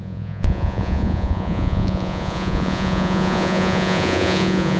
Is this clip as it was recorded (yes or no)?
no